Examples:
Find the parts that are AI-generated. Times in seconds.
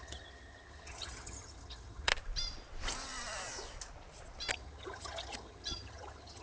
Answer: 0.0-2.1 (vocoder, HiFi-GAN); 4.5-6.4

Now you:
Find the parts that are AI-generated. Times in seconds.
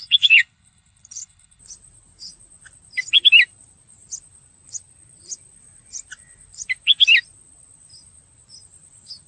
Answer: 0.0-1.6 (codec, HILCodec)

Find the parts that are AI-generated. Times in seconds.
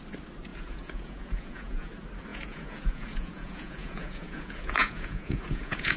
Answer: 0.5-1.9 (vocoder, Vocos); 2.3-6.0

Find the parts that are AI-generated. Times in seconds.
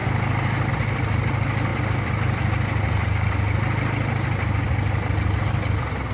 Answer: none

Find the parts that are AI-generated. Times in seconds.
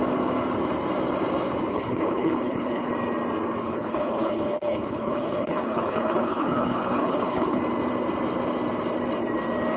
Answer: 1.7-2.9 (codec, HILCodec); 3.6-7.6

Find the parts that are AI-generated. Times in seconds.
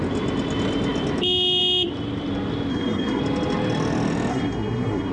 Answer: 2.7-3.2 (codec, SNAC); 4.3-5.1